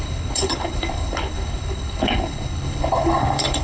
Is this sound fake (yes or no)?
yes